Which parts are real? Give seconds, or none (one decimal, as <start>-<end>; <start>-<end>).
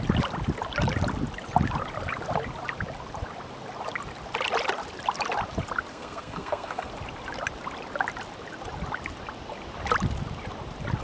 0.0-5.9; 6.9-11.0